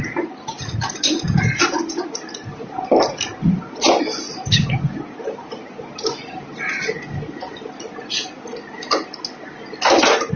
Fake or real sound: real